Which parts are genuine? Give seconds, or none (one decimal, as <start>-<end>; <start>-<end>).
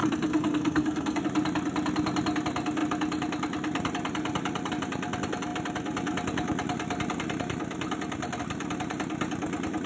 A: 1.2-9.9